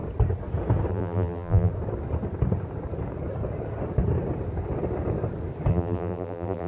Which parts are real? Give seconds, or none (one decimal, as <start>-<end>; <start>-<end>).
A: 0.0-0.9; 1.7-5.7